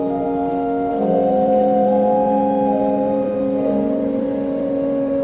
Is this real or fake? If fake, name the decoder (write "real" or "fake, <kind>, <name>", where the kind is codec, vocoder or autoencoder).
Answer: fake, vocoder, BigVGAN v2